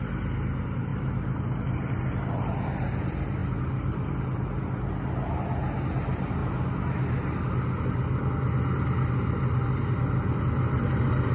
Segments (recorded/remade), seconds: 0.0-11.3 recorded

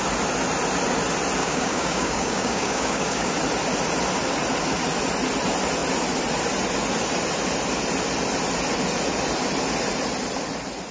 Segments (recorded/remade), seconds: 0.0-1.4 recorded; 1.4-3.3 remade; 3.3-10.9 recorded

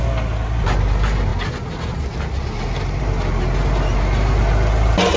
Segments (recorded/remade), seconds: 0.0-5.2 recorded

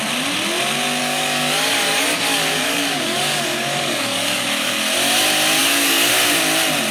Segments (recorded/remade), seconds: 0.0-1.0 recorded; 1.0-4.8 remade; 4.8-5.6 recorded; 5.6-6.1 remade; 6.1-6.9 recorded